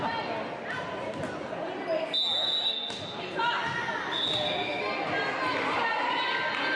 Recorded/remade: recorded